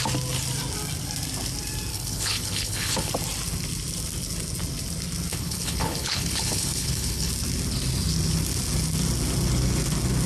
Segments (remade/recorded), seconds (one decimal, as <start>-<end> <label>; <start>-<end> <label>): 0.0-1.9 recorded; 1.9-3.1 remade; 3.1-5.3 recorded; 5.3-7.3 remade; 7.3-10.3 recorded